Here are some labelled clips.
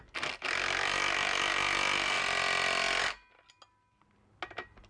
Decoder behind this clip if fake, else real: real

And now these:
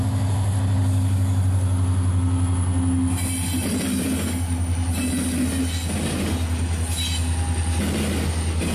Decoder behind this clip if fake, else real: real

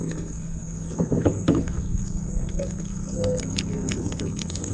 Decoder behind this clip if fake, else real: fake, codec, SNAC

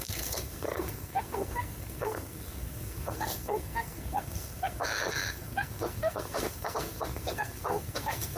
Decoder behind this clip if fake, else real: fake, codec, SNAC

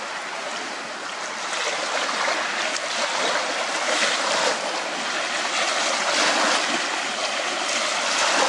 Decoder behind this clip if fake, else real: real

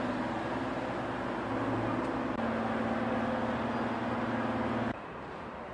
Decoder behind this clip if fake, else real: real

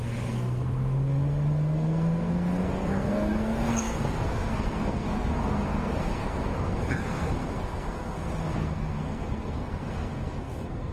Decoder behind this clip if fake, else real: fake, codec, SNAC